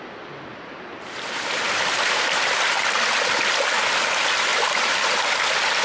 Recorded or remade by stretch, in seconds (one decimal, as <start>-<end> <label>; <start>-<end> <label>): 0.0-0.5 recorded; 0.5-2.5 remade; 2.5-4.5 recorded; 4.5-5.2 remade; 5.2-5.8 recorded